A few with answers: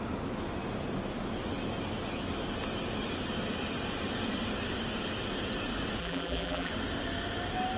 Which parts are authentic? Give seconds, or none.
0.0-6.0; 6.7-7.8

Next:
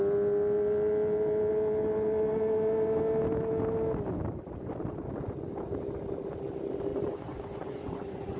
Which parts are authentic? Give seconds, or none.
0.0-6.9

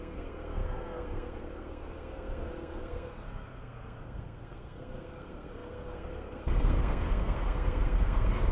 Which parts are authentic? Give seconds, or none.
none

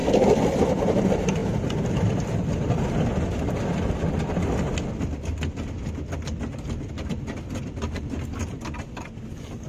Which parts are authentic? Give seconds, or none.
0.0-9.7

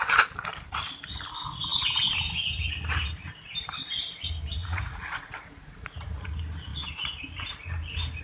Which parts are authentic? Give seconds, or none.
0.0-4.6; 6.3-8.2